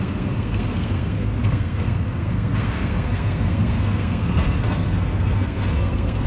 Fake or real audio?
fake